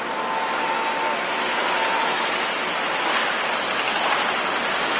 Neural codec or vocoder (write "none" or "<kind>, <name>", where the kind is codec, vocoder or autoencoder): none